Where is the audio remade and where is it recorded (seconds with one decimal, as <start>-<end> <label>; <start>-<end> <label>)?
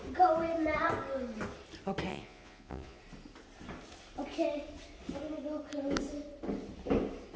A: 0.0-2.1 recorded; 2.1-3.0 remade; 3.0-7.4 recorded